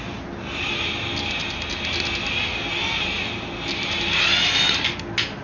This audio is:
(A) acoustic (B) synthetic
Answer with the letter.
A